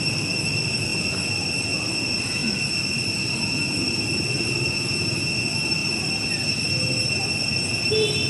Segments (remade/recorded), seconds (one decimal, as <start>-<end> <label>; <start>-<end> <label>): 0.0-5.8 recorded; 5.8-6.3 remade; 6.3-8.3 recorded